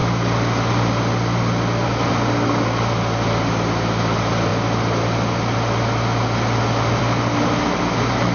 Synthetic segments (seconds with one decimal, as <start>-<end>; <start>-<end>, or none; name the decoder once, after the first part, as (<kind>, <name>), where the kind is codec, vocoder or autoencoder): none